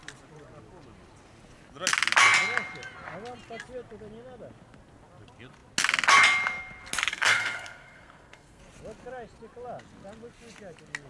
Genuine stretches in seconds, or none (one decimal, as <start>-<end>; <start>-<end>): 0.0-7.1; 8.6-11.1